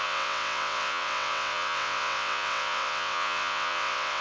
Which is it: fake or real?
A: fake